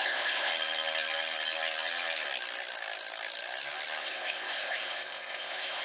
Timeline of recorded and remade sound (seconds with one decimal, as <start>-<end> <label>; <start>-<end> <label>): 0.0-0.5 remade; 0.5-4.0 recorded; 4.0-5.8 remade